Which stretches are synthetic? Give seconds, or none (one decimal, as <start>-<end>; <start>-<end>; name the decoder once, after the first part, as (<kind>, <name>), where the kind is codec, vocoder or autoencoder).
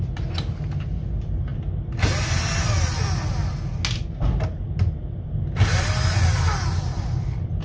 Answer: none